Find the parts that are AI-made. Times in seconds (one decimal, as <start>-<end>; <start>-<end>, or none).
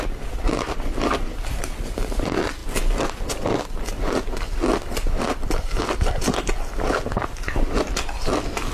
none